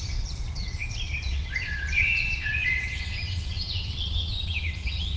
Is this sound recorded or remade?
remade